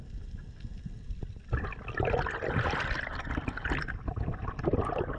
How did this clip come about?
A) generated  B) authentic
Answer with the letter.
B